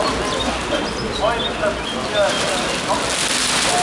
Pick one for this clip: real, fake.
real